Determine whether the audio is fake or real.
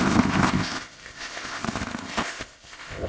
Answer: fake